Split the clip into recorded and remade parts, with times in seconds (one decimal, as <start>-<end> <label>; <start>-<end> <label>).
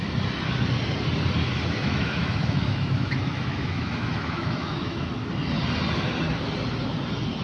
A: 0.0-1.8 recorded; 1.8-5.1 remade; 5.1-7.4 recorded